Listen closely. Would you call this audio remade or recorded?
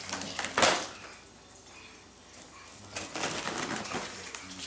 recorded